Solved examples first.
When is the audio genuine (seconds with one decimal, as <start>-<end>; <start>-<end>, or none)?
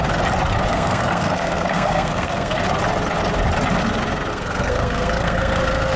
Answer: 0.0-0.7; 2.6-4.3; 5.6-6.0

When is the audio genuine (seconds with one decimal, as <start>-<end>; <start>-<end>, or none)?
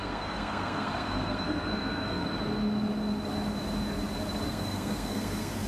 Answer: 2.2-4.5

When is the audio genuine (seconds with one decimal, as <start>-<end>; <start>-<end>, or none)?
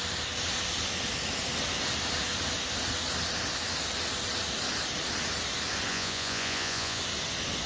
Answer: 0.0-5.9; 7.0-7.7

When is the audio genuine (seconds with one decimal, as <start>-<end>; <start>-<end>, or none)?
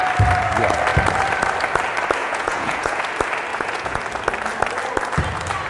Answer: 0.0-2.2; 3.0-3.5; 4.0-5.7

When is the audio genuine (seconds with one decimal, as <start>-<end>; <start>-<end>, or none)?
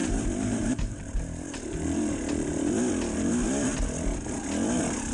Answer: 2.7-5.1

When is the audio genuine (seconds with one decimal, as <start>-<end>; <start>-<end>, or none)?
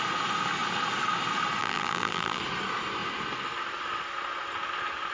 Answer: 0.0-1.6; 2.4-5.1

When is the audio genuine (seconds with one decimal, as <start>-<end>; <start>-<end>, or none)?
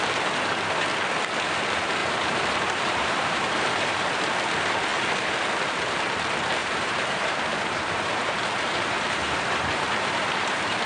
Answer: 0.0-2.0; 4.1-6.6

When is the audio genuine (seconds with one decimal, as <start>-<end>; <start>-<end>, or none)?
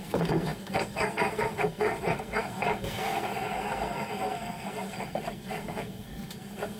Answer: none